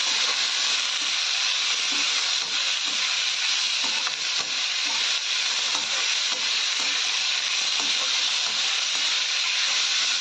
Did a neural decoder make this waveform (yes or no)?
no